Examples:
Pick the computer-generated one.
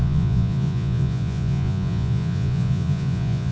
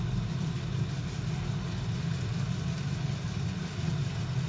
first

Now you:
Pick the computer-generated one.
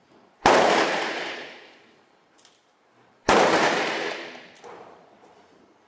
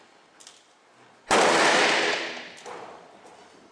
first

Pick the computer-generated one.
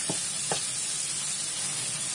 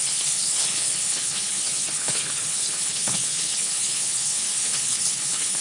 second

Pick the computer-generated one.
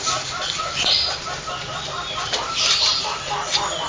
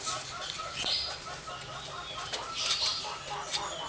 first